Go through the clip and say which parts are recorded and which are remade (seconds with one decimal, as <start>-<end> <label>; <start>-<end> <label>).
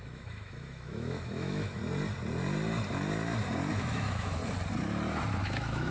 0.0-1.8 remade; 1.8-3.7 recorded; 3.7-4.4 remade; 4.4-5.4 recorded; 5.4-5.9 remade